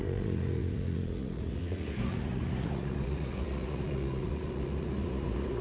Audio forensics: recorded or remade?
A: remade